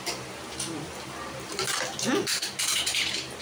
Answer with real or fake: fake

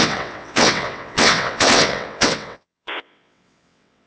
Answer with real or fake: fake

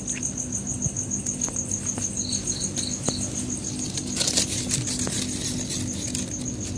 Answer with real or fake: real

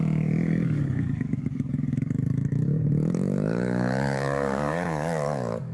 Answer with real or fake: fake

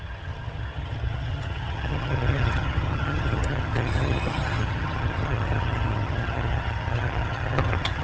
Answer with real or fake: fake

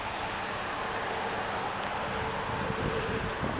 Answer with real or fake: real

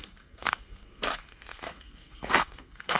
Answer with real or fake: fake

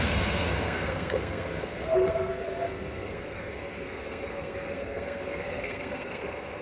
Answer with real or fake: fake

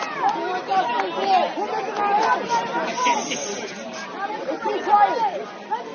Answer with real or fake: real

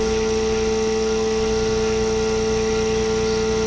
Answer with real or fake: real